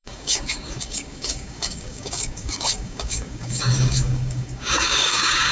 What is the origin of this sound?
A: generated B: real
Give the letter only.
A